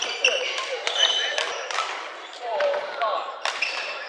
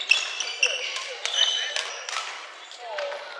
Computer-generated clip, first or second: first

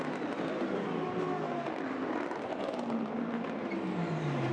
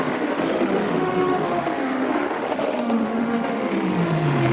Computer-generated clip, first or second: second